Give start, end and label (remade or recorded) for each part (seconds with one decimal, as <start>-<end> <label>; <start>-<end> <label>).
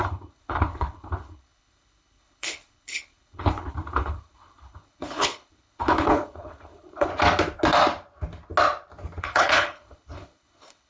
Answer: 0.0-7.1 remade; 7.1-9.2 recorded; 9.2-10.9 remade